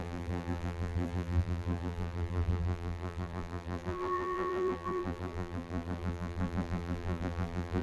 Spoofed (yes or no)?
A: yes